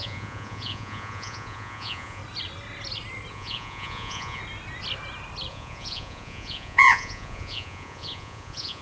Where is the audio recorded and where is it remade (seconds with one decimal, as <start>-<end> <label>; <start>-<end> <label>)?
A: 0.0-2.2 remade; 2.2-3.3 recorded; 3.3-4.4 remade; 4.4-5.5 recorded; 5.5-8.8 remade